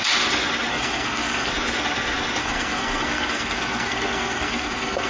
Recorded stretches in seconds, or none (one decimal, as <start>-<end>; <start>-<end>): 0.0-0.7; 1.5-2.4